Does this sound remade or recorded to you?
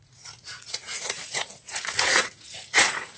remade